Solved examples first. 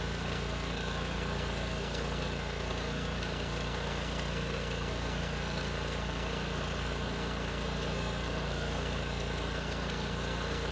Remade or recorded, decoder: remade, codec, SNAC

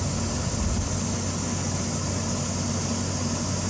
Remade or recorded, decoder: recorded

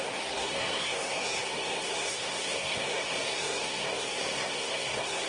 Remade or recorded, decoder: remade, codec, SNAC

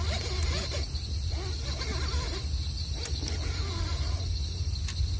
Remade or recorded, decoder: recorded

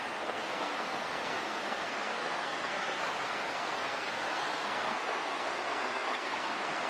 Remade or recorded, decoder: remade, codec, SNAC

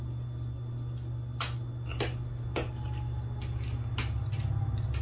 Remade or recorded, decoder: recorded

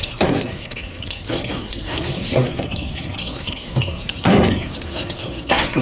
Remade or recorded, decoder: remade, codec, SNAC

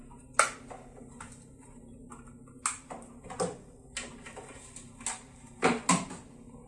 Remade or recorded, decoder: recorded